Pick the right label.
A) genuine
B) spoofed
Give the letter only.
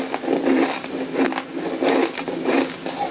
A